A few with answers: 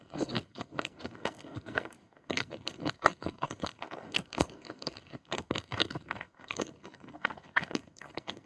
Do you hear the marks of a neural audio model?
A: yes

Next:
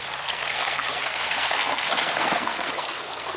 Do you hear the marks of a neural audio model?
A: yes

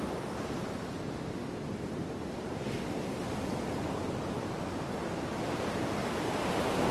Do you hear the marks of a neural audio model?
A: no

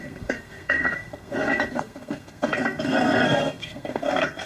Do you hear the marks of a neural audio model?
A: yes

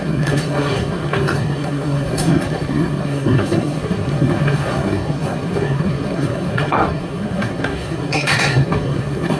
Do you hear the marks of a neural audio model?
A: yes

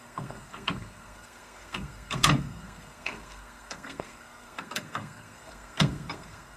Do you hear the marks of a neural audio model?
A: yes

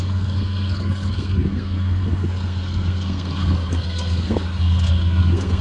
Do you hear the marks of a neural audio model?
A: yes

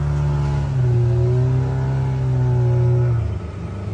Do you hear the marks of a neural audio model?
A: no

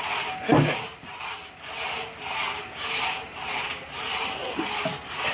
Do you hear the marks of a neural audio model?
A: no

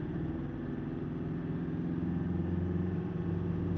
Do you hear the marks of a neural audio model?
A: no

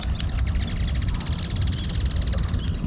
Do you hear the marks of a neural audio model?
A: no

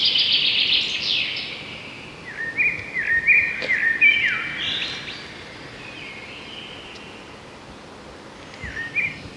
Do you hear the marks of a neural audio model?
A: no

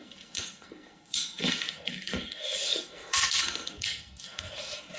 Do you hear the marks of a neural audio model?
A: yes